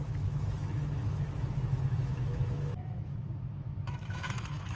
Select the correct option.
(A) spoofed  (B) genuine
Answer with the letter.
A